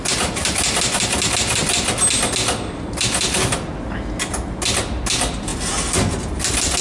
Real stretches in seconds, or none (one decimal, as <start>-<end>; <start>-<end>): 0.0-6.8